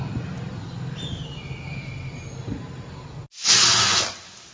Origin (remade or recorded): recorded